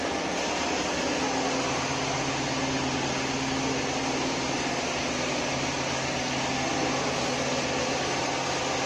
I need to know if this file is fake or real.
real